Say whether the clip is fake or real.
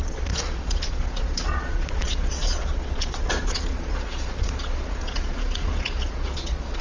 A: fake